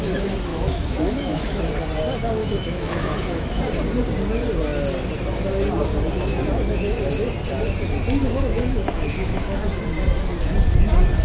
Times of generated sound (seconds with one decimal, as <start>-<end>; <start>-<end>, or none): 0.5-1.6; 2.4-3.6; 8.2-9.6